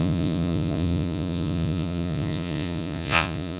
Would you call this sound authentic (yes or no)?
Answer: no